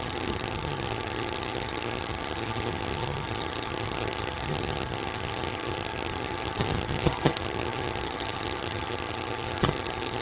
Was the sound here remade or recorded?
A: remade